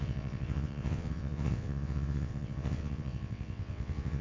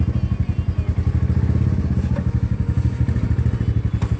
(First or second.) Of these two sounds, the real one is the second